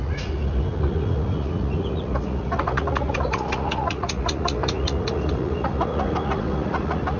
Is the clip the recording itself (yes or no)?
no